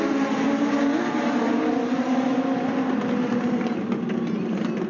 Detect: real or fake real